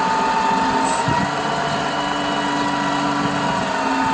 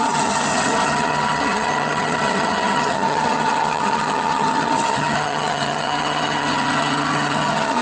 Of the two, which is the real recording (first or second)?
first